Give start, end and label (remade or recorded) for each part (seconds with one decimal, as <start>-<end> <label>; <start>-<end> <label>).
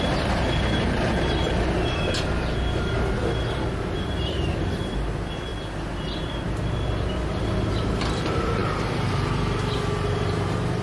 0.0-1.4 remade; 1.4-3.8 recorded; 3.8-5.5 remade; 5.5-7.7 recorded; 7.7-10.8 remade